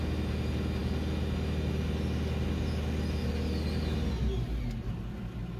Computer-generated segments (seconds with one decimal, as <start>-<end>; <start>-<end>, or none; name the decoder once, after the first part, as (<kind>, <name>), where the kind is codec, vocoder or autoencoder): none